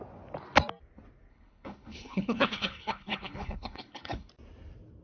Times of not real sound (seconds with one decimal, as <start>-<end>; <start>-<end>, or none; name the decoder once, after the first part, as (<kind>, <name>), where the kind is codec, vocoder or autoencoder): 1.3-4.3 (codec, HILCodec)